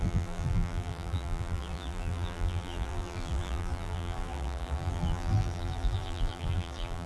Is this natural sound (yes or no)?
no